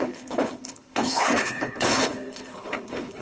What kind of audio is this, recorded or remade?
remade